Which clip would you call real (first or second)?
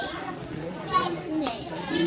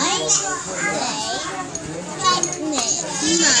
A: second